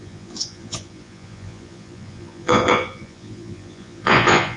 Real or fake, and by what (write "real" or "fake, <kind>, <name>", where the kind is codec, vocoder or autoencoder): fake, vocoder, Vocos